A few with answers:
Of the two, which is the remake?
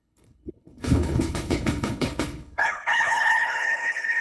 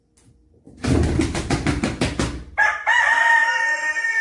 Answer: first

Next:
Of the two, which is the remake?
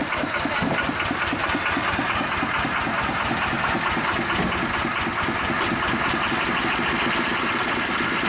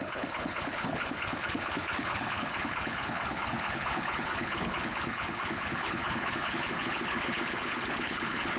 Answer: second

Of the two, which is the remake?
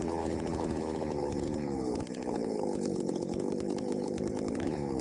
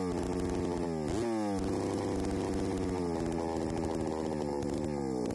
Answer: first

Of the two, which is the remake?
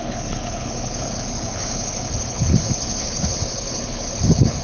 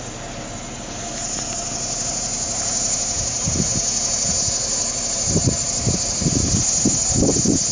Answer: first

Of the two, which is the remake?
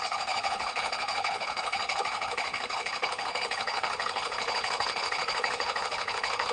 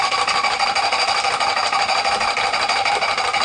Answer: first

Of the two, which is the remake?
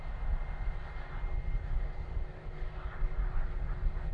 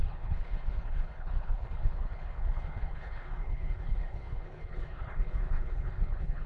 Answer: second